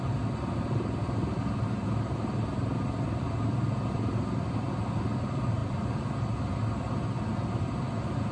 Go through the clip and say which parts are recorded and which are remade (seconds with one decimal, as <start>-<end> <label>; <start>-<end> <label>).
0.0-8.3 recorded